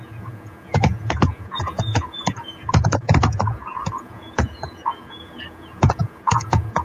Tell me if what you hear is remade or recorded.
remade